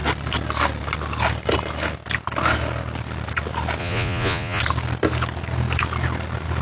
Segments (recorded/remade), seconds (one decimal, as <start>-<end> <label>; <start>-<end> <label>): 0.0-3.8 recorded; 3.8-4.6 remade; 4.6-6.6 recorded